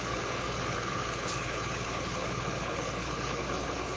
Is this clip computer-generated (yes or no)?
yes